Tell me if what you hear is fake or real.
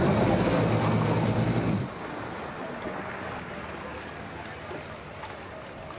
real